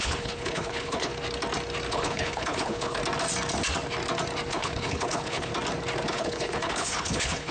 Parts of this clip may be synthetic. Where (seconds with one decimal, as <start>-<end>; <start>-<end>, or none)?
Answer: 0.0-1.1; 1.9-3.0; 4.5-5.5; 6.1-7.5